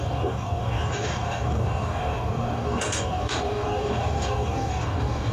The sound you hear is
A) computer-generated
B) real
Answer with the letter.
A